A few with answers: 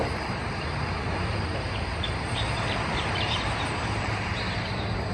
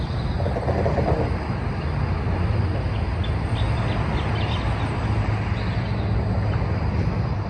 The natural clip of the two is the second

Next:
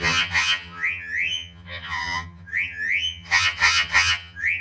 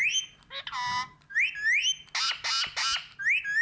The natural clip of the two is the second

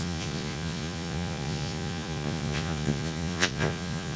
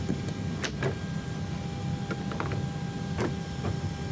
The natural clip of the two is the second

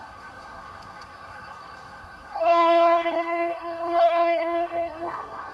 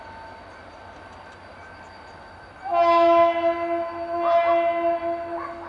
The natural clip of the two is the second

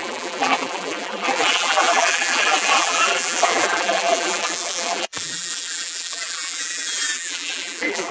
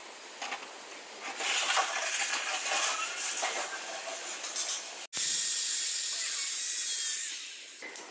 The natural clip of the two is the second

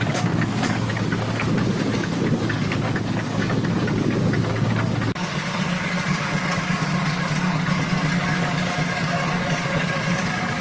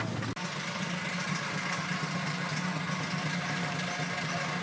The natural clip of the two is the second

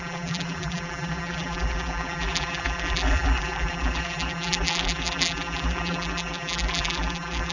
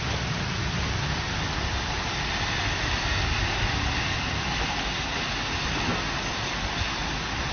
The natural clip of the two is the second